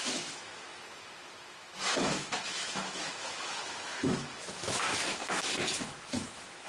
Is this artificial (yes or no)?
yes